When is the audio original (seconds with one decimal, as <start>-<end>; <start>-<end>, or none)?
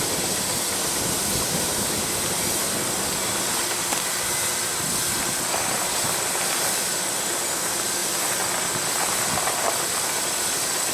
0.0-10.9